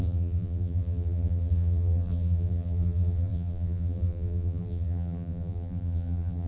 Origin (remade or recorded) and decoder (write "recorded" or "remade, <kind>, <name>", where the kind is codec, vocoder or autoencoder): remade, vocoder, BigVGAN v2